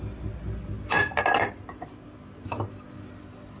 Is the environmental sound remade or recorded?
recorded